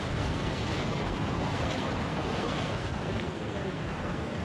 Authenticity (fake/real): fake